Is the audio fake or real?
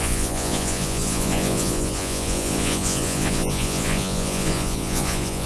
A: fake